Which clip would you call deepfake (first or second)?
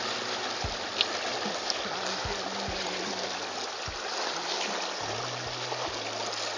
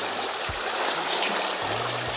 second